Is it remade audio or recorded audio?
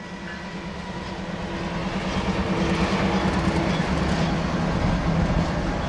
recorded